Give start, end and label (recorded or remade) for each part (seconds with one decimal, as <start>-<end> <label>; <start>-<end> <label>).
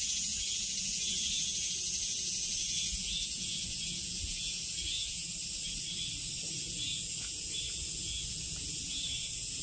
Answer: 0.0-5.2 remade; 5.2-6.5 recorded; 6.5-9.6 remade